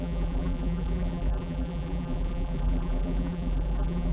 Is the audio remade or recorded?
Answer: remade